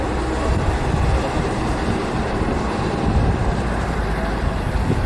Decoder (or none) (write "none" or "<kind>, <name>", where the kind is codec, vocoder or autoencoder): vocoder, BigVGAN v2